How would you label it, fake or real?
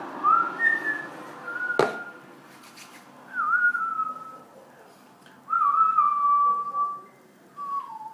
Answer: real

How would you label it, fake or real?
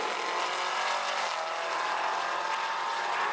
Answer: real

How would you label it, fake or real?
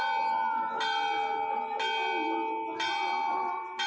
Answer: real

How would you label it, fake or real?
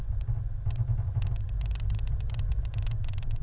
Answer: real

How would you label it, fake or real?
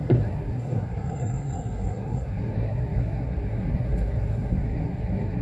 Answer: fake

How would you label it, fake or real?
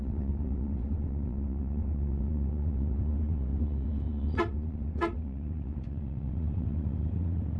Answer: fake